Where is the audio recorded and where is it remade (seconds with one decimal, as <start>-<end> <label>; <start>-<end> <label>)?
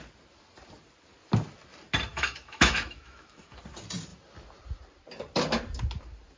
0.0-2.1 recorded; 2.1-3.6 remade; 3.6-6.4 recorded